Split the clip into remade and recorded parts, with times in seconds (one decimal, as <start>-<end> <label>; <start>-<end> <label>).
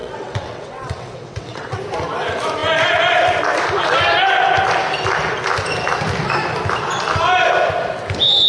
0.0-1.8 remade; 1.8-8.5 recorded